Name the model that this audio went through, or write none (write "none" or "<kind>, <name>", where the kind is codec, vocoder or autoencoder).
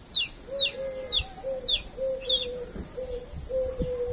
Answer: none